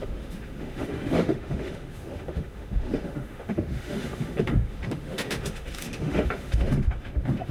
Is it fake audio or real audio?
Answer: fake